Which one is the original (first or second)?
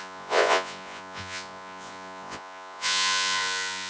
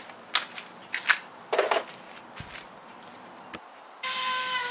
second